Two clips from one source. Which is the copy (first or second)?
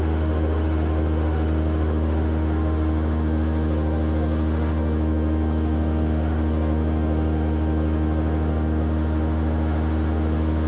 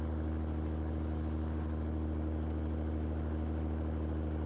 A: first